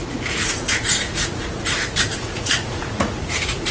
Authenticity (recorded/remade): remade